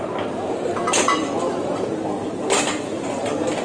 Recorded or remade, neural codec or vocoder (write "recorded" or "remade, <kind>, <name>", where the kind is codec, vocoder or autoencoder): recorded